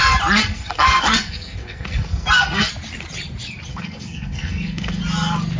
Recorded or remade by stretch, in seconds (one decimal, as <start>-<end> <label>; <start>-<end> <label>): 0.0-0.4 recorded; 0.4-2.7 remade; 2.7-3.7 recorded; 3.7-5.0 remade; 5.0-5.6 recorded